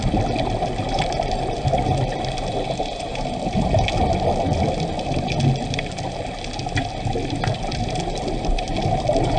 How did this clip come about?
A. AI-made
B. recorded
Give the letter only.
B